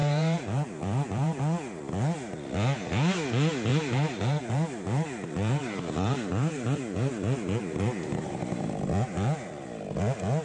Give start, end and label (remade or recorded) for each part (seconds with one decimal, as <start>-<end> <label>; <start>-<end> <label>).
0.0-1.4 remade; 1.4-3.7 recorded; 3.7-8.7 remade; 8.7-10.4 recorded